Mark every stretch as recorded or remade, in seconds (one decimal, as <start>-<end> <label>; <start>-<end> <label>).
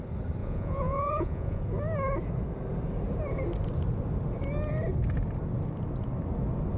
0.0-0.4 recorded; 0.4-1.6 remade; 1.6-6.8 recorded